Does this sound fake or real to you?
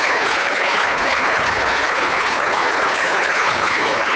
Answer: fake